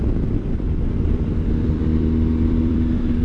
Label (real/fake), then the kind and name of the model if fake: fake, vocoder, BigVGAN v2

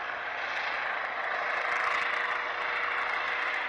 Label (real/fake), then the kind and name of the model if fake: real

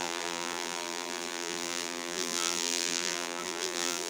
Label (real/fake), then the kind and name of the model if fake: fake, vocoder, BigVGAN v2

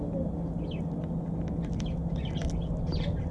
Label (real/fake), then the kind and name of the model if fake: real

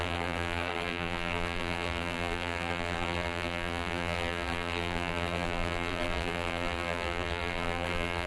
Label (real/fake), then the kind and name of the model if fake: fake, vocoder, BigVGAN v2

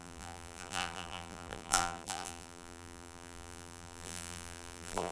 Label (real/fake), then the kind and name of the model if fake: fake, vocoder, BigVGAN v2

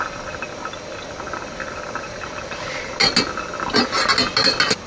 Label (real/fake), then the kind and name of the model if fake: real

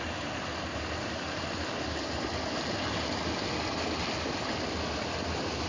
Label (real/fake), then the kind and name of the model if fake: real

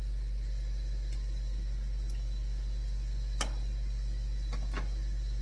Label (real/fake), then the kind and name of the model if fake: real